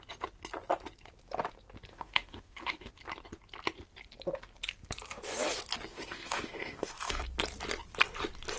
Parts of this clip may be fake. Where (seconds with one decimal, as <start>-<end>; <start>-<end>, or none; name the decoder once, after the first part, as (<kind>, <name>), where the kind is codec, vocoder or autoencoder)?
1.9-2.9 (autoencoder, DAC-VAE); 5.9-7.2

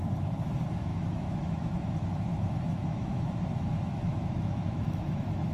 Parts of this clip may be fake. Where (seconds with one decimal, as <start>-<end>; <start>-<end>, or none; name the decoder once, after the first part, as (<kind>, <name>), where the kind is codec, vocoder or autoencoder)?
0.0-5.5 (autoencoder, DAC-VAE)

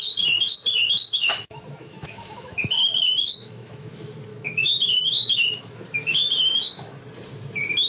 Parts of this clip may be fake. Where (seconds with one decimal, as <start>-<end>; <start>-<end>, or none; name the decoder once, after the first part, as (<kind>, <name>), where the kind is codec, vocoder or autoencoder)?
1.2-3.9 (autoencoder, DAC-VAE); 4.3-7.0

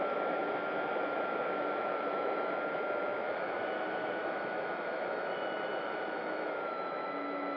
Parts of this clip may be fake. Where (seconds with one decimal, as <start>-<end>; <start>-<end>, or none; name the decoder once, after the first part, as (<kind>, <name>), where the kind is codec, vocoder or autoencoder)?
0.0-7.6 (autoencoder, DAC-VAE)